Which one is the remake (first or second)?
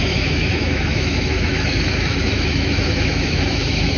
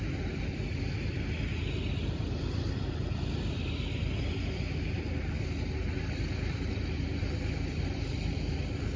first